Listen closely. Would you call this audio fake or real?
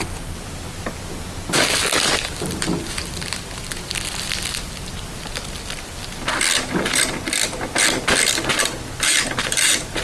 real